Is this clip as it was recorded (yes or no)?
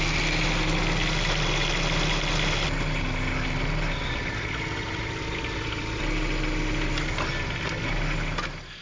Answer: yes